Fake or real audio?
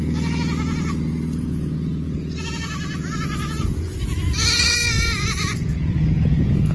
fake